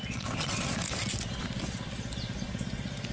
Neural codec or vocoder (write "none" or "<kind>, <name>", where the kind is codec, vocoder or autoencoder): none